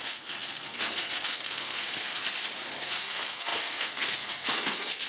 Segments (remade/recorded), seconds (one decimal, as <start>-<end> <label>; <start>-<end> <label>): 0.0-2.2 remade; 2.2-2.8 recorded; 2.8-5.1 remade